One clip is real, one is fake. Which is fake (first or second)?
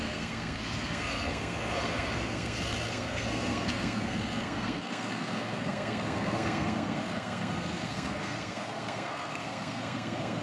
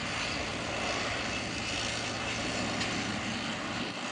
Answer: first